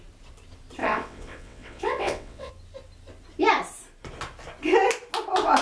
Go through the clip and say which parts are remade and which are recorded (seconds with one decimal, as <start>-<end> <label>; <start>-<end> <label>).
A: 0.0-0.8 recorded; 0.8-2.5 remade; 2.5-5.6 recorded

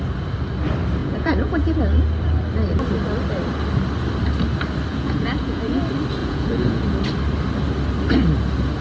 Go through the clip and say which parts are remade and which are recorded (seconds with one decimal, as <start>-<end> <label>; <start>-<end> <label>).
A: 0.0-1.0 recorded; 1.0-1.8 remade; 1.8-4.9 recorded; 4.9-5.8 remade; 5.8-6.2 recorded; 6.2-6.8 remade; 6.8-8.8 recorded

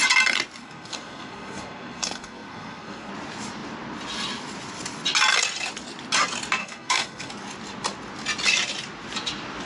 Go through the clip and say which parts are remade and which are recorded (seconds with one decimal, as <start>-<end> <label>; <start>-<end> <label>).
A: 0.0-0.6 recorded; 0.6-3.1 remade; 3.1-6.6 recorded; 6.6-7.3 remade; 7.3-9.7 recorded